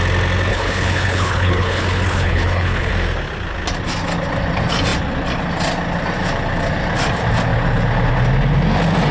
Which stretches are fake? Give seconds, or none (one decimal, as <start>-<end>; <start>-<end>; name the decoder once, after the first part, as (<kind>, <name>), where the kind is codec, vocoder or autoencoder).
0.5-2.9 (codec, HILCodec)